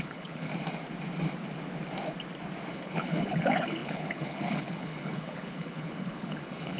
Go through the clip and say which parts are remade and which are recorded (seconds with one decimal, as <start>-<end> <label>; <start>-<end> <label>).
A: 0.0-0.5 remade; 0.5-2.7 recorded; 2.7-6.8 remade